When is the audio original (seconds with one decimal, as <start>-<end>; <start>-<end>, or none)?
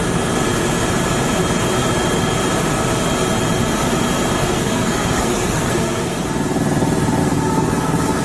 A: 0.0-4.4; 6.2-7.2